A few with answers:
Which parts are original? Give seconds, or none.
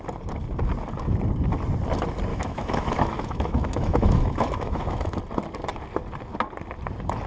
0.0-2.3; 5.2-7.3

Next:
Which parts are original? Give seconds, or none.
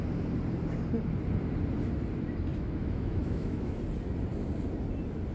0.0-2.5; 3.8-5.3